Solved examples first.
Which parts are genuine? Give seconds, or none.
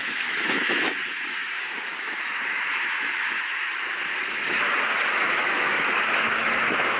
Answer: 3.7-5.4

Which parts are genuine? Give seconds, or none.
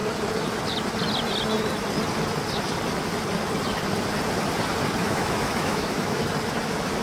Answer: 0.0-5.0; 6.2-7.0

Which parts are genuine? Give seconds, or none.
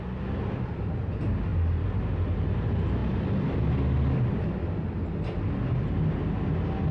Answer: 0.0-6.9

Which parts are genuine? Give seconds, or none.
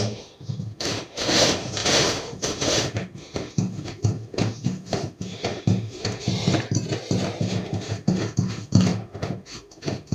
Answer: 6.3-7.4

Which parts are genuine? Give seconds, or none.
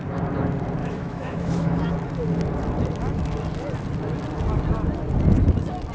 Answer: 0.0-0.8; 1.9-5.9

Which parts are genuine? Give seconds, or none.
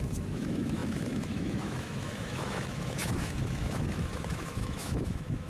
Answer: none